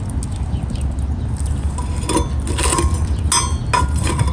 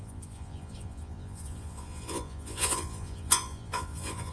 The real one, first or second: first